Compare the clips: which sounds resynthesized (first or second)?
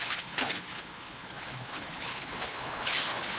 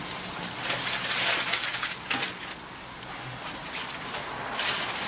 first